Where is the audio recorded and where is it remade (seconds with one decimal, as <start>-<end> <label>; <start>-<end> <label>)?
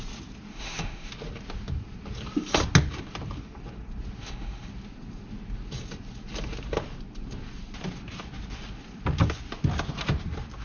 0.0-0.5 recorded; 0.5-1.1 remade; 1.1-4.2 recorded; 4.2-4.7 remade; 4.7-10.6 recorded